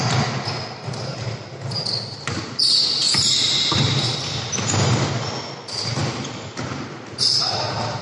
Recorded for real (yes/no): yes